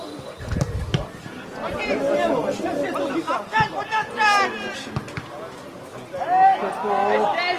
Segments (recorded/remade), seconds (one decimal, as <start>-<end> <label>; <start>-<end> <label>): 0.0-7.6 recorded